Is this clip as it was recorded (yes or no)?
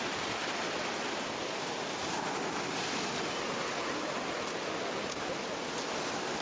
yes